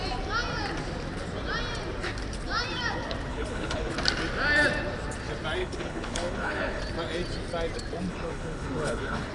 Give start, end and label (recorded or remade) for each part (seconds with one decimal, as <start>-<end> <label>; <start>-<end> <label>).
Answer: 0.0-3.3 recorded; 3.3-3.9 remade; 3.9-5.6 recorded; 5.6-6.8 remade; 6.8-8.1 recorded; 8.1-9.3 remade